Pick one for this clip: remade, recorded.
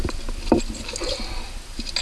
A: recorded